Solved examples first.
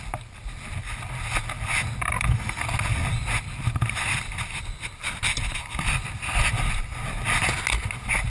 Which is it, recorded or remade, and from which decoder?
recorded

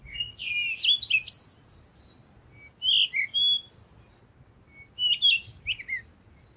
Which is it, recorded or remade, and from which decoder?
recorded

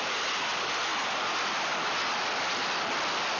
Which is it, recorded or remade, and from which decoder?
recorded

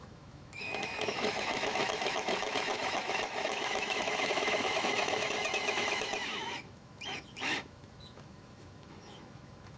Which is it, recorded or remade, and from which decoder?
remade, autoencoder, DAC-VAE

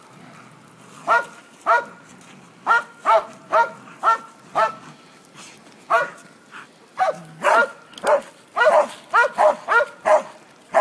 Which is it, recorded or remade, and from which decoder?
recorded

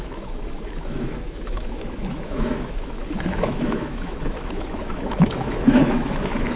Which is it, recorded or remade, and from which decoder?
remade, autoencoder, DAC-VAE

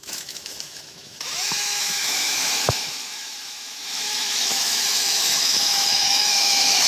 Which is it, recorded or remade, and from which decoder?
remade, autoencoder, DAC-VAE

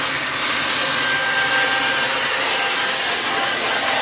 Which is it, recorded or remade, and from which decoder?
recorded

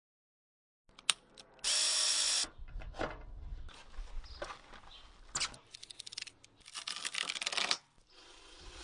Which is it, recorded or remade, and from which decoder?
recorded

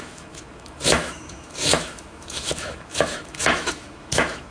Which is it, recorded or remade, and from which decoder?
remade, autoencoder, DAC-VAE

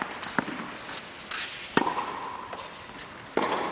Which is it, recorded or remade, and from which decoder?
recorded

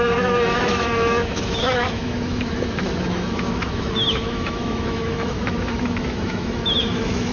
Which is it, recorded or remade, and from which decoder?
remade, autoencoder, DAC-VAE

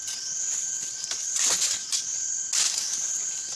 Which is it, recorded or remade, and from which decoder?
recorded